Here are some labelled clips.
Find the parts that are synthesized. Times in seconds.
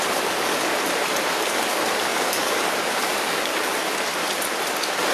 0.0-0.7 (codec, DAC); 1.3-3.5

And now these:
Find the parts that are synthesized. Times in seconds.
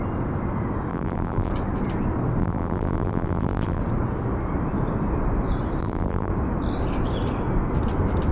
0.9-1.5 (vocoder, BigVGAN v2); 2.4-3.8; 5.8-6.3